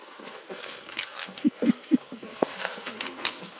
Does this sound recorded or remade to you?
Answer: remade